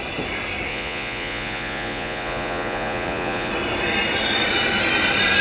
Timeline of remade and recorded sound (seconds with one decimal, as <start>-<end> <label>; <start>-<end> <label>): 0.0-0.7 recorded; 0.7-3.5 remade; 3.5-5.4 recorded